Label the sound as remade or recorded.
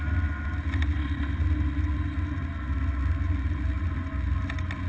recorded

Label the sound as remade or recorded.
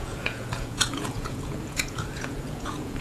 remade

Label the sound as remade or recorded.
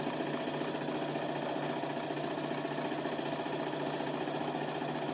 recorded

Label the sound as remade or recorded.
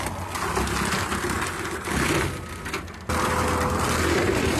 recorded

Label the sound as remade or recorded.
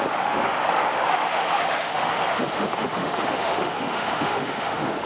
remade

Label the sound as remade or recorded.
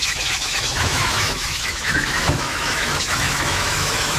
remade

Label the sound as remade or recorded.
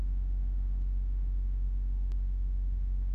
remade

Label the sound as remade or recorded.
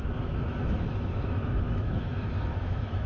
remade